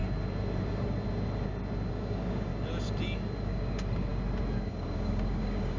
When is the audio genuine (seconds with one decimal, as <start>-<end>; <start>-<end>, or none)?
0.0-1.9; 2.5-3.4; 4.1-4.7